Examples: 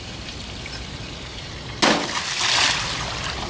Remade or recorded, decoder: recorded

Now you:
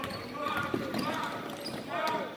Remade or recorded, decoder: recorded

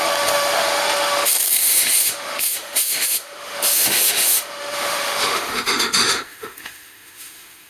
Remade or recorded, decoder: remade, autoencoder, DAC-VAE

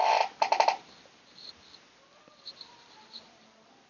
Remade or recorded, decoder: recorded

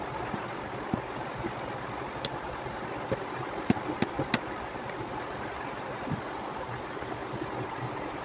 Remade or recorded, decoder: recorded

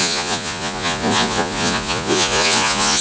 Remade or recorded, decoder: remade, vocoder, Vocos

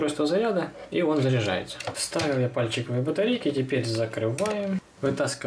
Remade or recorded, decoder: recorded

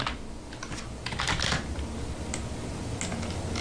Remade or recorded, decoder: recorded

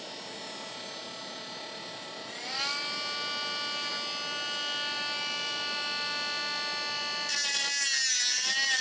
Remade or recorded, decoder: recorded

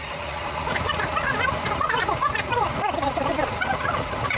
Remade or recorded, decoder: remade, vocoder, Vocos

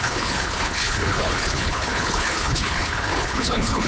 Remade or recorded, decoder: remade, codec, HILCodec